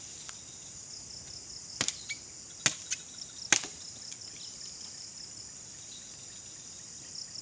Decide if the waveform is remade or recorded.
recorded